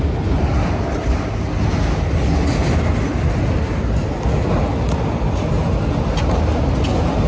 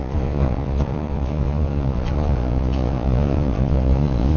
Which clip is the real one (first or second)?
first